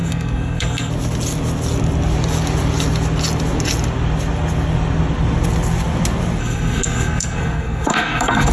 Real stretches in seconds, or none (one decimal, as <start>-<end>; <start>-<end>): 0.9-6.4